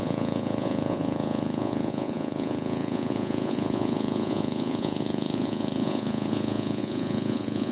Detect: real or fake fake